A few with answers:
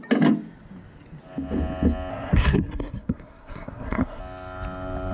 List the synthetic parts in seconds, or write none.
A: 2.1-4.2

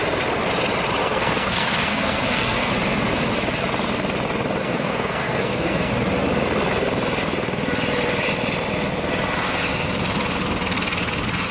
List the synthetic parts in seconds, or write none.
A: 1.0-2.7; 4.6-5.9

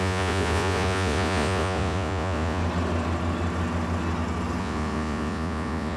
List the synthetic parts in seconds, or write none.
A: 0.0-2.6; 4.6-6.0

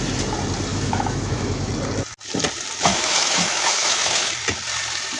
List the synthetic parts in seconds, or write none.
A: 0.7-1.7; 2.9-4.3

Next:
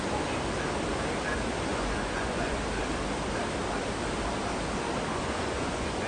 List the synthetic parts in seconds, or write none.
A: 1.7-2.6; 5.1-6.1